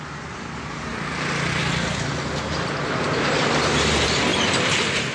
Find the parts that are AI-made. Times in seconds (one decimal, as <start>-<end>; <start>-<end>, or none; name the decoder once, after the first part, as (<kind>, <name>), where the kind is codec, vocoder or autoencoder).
4.3-5.1 (vocoder, BigVGAN v2)